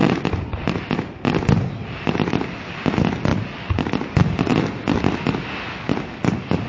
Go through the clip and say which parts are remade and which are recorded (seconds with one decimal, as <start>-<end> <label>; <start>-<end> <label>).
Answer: 0.0-0.8 remade; 0.8-6.7 recorded